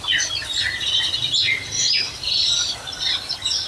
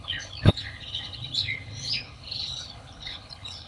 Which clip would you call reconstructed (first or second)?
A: second